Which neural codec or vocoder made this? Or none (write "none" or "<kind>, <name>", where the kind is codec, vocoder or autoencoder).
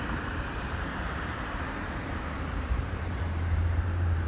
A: vocoder, BigVGAN v2